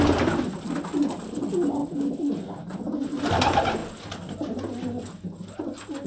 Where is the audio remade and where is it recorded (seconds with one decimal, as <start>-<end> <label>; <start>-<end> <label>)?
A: 0.0-6.1 recorded